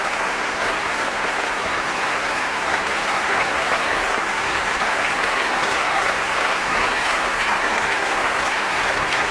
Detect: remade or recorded remade